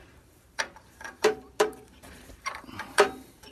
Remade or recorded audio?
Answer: remade